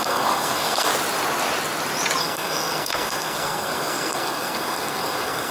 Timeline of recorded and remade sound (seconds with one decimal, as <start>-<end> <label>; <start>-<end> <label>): 0.0-0.9 remade; 0.9-2.2 recorded; 2.2-5.5 remade